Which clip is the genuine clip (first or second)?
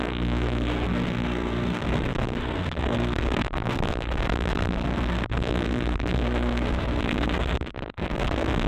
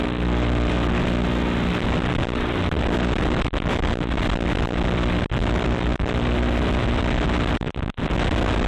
second